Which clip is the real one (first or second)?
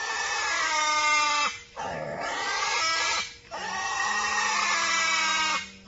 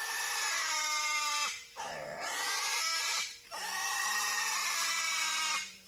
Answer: first